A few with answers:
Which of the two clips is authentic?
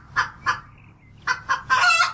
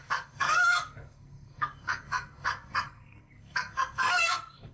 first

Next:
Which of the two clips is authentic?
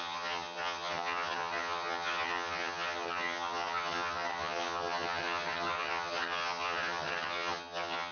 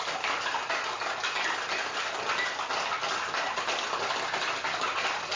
second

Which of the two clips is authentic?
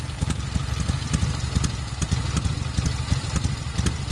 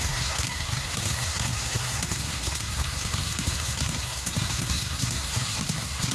first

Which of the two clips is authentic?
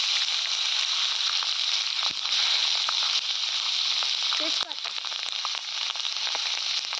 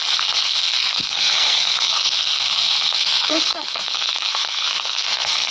first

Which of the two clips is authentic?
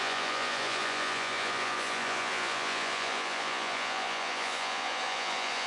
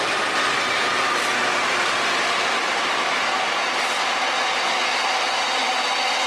second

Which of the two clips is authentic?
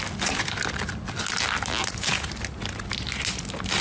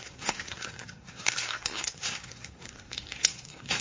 first